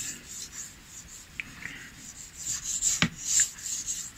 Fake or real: real